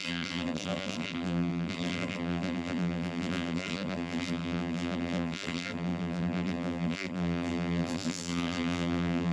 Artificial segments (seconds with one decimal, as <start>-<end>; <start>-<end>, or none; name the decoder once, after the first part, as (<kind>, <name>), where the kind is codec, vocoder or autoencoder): 0.0-9.3 (vocoder, BigVGAN v2)